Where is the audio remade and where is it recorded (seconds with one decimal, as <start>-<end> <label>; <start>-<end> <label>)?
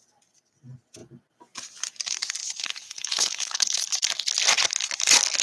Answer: 0.0-2.4 recorded; 2.4-3.8 remade; 3.8-5.4 recorded